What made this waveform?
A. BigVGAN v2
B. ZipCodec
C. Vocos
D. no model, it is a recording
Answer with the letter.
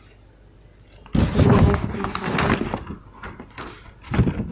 D